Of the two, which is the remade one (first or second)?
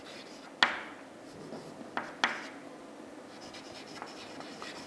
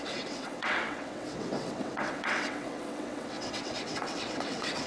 second